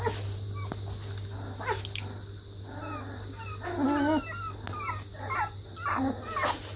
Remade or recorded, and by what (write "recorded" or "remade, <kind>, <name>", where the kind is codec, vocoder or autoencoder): recorded